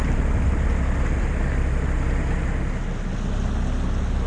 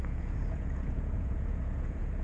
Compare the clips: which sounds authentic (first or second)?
first